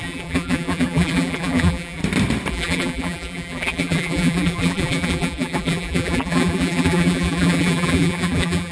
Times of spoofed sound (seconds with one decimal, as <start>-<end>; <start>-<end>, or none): 0.0-2.0; 2.5-8.7